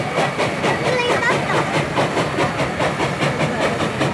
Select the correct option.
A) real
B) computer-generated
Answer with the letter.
A